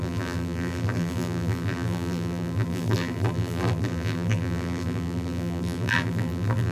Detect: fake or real fake